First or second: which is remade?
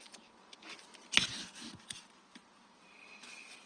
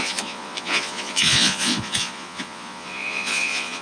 second